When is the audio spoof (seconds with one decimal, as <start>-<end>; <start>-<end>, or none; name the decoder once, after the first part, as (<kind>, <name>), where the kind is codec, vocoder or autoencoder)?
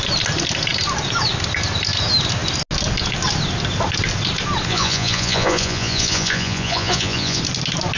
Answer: 4.7-7.4 (vocoder, Vocos)